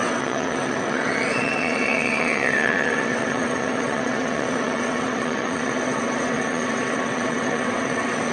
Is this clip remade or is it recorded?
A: remade